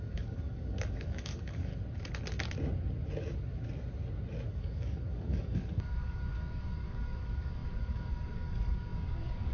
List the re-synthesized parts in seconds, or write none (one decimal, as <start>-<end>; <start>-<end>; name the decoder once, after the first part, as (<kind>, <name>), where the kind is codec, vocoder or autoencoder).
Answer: 0.0-1.7 (codec, DAC); 4.5-9.5